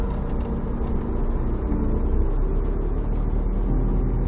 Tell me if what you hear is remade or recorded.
recorded